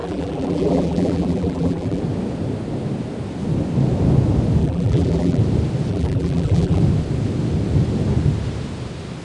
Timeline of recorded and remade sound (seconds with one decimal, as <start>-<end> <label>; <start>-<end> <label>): 0.0-2.0 remade; 2.0-4.6 recorded; 4.6-5.4 remade; 5.4-5.9 recorded; 5.9-6.8 remade; 6.8-9.2 recorded